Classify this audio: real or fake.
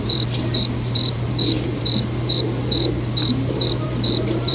fake